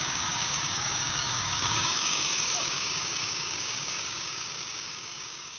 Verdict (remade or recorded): remade